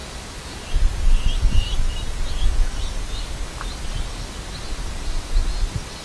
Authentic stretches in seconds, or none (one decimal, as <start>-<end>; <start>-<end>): 0.0-6.0